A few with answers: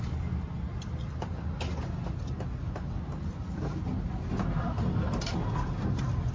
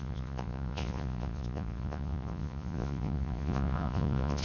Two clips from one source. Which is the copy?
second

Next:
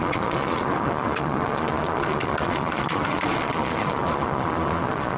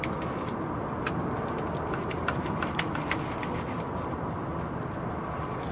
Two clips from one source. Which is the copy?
first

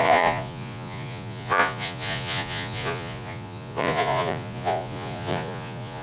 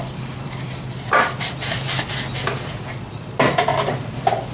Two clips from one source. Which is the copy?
first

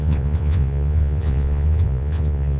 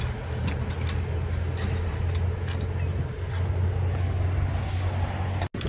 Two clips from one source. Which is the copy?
first